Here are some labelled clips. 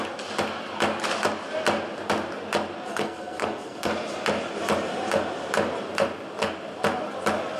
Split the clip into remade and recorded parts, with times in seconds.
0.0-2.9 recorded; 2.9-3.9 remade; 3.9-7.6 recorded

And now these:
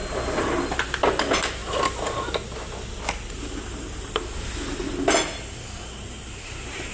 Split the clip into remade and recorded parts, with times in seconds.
0.0-6.9 recorded

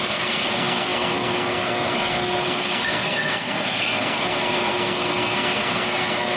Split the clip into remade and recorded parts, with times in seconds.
0.0-6.4 remade

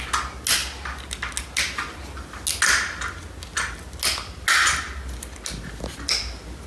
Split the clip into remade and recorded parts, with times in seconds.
0.0-6.7 recorded

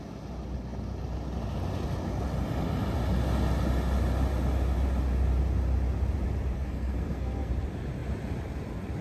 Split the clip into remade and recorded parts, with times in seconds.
0.0-6.5 recorded; 6.5-7.5 remade; 7.5-9.0 recorded